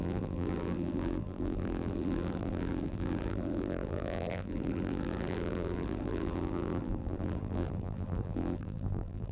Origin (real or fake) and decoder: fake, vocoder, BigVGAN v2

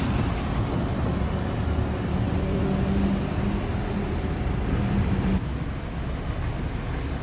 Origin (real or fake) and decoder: real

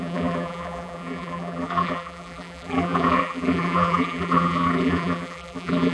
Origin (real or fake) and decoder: fake, vocoder, BigVGAN v2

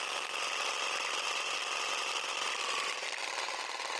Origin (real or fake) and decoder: real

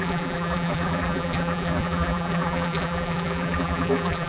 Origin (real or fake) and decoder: fake, vocoder, BigVGAN v2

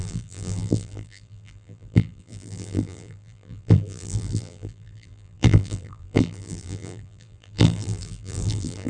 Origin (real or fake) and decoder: fake, vocoder, BigVGAN v2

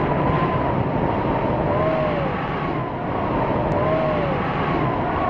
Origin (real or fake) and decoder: real